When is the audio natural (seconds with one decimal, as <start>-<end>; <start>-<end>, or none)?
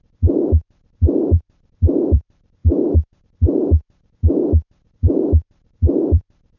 2.6-3.2; 3.8-5.0